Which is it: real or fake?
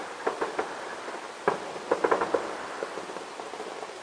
real